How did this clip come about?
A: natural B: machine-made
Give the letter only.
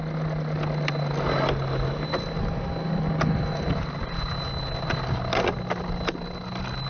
A